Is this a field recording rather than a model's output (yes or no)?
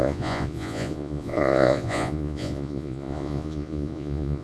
no